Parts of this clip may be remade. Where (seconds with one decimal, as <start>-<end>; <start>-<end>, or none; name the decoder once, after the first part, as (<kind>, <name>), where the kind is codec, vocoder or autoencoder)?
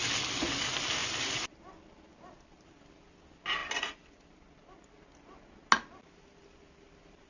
none